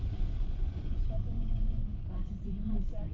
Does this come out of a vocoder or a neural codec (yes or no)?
yes